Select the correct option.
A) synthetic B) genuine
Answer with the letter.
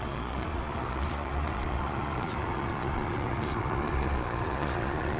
A